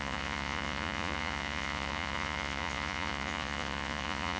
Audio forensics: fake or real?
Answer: fake